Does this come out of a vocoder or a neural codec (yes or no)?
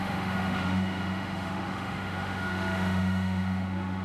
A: yes